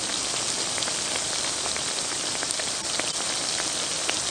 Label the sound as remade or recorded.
recorded